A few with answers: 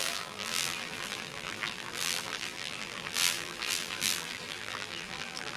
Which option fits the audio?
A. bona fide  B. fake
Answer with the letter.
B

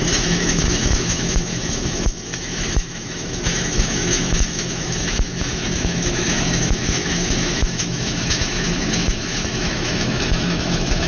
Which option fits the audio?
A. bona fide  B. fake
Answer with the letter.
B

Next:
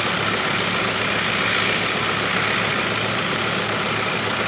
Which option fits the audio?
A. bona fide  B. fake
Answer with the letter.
A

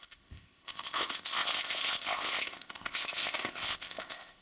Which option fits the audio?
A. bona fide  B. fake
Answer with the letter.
B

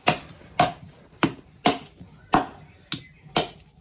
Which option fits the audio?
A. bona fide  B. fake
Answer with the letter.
A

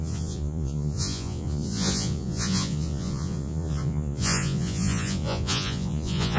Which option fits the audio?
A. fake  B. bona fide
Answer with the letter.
A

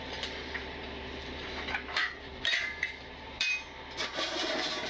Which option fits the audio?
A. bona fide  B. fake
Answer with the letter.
B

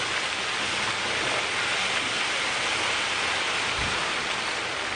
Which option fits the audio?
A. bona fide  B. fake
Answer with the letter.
A